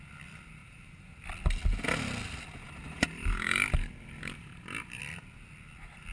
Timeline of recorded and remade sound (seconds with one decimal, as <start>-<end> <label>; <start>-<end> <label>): 0.0-0.6 recorded; 0.6-1.2 remade; 1.2-2.6 recorded; 2.6-5.0 remade; 5.0-6.1 recorded